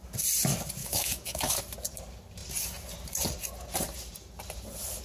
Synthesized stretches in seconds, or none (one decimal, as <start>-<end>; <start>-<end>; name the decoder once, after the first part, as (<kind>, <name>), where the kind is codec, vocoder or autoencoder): 0.8-1.6 (autoencoder, DAC-VAE)